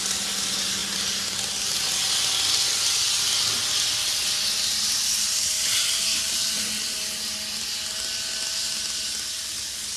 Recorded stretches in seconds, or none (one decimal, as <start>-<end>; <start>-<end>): 0.0-10.0